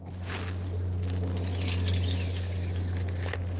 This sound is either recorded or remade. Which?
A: recorded